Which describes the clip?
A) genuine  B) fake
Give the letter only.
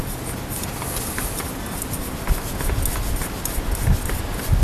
A